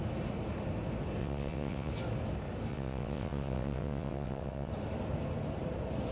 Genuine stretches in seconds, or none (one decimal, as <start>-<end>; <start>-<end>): 0.0-1.2; 1.9-2.7; 4.7-6.1